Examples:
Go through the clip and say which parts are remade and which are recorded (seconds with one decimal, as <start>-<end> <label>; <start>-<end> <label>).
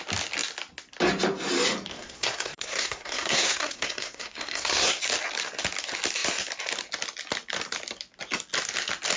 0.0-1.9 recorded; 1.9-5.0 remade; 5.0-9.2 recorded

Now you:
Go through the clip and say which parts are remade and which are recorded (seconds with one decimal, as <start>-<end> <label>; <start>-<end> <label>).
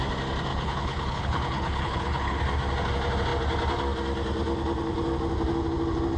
0.0-0.5 recorded; 0.5-2.4 remade; 2.4-6.2 recorded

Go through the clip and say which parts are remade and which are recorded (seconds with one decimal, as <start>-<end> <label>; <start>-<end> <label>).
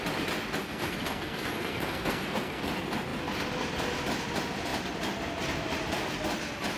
0.0-0.6 recorded; 0.6-2.7 remade; 2.7-6.8 recorded